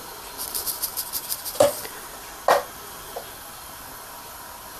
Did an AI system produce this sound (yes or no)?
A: no